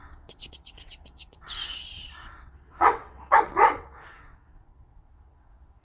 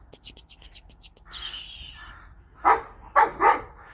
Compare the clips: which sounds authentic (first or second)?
second